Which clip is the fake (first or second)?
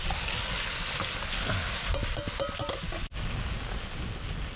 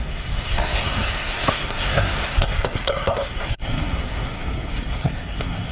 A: second